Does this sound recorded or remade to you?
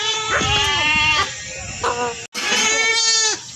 recorded